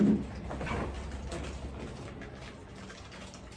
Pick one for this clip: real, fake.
real